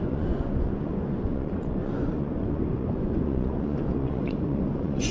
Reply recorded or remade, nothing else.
remade